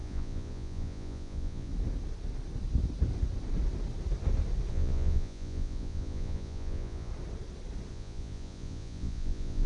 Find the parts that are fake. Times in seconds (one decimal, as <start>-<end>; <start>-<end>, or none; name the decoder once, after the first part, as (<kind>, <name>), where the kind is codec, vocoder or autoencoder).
0.0-1.7 (vocoder, Vocos); 4.7-7.1; 7.9-9.7